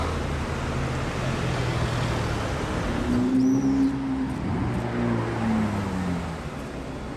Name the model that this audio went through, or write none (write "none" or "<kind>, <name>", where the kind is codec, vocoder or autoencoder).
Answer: none